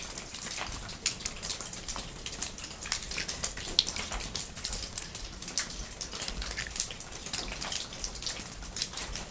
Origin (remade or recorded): recorded